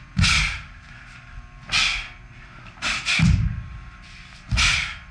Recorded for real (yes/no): yes